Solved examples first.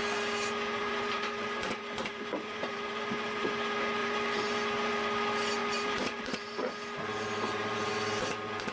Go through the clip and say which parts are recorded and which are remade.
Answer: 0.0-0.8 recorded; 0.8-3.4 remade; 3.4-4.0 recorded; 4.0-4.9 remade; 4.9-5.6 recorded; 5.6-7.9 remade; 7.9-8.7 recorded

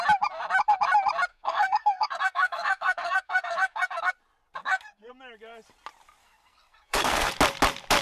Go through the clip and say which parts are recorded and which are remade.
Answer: 0.0-1.3 recorded; 1.3-4.1 remade; 4.1-4.6 recorded; 4.6-5.1 remade; 5.1-6.2 recorded; 6.2-7.3 remade; 7.3-8.0 recorded

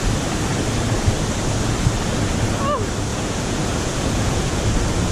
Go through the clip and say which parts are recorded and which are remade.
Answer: 0.0-3.1 recorded; 3.1-4.6 remade; 4.6-5.1 recorded

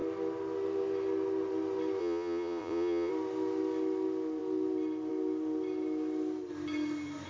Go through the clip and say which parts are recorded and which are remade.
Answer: 0.0-2.0 recorded; 2.0-3.1 remade; 3.1-7.3 recorded

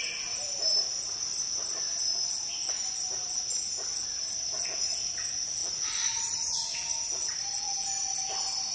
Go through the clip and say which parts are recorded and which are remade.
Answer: 0.0-3.9 recorded; 3.9-5.1 remade; 5.1-5.6 recorded; 5.6-7.7 remade; 7.7-8.7 recorded

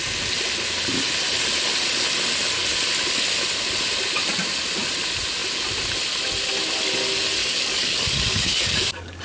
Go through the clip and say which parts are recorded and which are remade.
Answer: 0.0-7.4 recorded; 7.4-9.2 remade

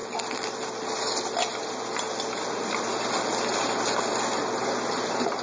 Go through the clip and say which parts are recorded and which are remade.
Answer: 0.0-5.4 recorded

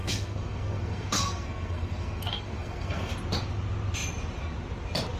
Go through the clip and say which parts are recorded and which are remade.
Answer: 0.0-3.1 remade; 3.1-5.2 recorded